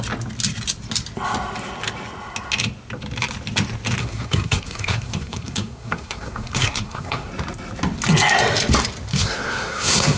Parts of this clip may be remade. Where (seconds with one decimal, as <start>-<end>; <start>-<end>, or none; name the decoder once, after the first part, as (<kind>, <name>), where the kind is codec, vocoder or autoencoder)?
4.0-7.3 (codec, SNAC); 9.1-10.2